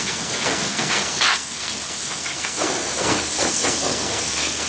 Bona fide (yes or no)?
no